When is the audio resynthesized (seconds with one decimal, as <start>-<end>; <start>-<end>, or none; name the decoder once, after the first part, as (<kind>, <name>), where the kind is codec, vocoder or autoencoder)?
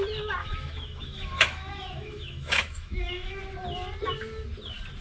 0.4-3.4 (autoencoder, DAC-VAE)